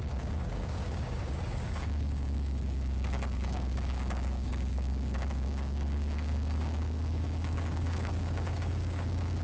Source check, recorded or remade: remade